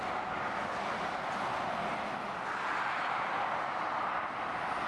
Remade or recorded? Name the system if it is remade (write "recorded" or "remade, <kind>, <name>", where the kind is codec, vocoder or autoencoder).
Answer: recorded